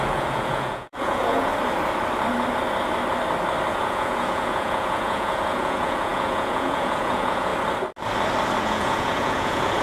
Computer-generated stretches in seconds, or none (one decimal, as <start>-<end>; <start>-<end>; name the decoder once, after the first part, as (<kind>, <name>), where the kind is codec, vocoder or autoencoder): 0.0-1.5 (vocoder, Vocos); 3.7-7.5; 8.6-9.8